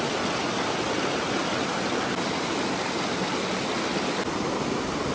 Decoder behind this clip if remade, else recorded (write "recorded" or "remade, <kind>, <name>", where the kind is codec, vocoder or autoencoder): recorded